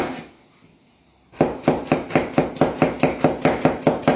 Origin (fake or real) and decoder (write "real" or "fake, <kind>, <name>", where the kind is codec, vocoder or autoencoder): real